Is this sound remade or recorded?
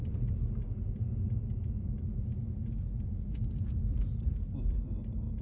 recorded